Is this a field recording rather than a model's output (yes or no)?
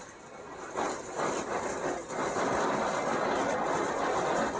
yes